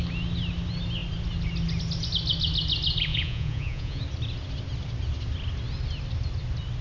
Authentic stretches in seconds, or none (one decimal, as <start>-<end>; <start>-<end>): 0.0-3.1; 4.0-6.8